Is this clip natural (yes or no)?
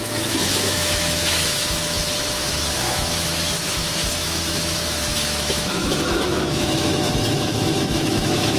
no